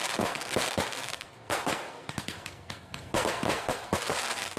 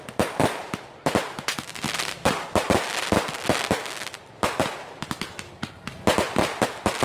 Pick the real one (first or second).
second